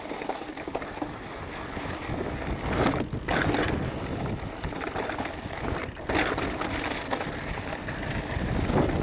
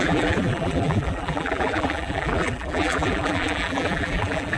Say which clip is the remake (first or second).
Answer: second